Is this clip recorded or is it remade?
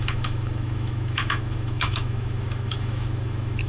remade